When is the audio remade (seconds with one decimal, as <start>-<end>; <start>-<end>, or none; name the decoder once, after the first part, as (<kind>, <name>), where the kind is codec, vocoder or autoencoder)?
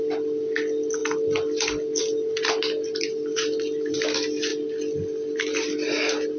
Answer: none